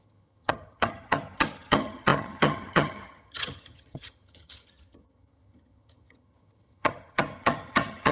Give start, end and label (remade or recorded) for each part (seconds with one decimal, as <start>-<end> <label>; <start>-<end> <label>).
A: 0.0-8.1 remade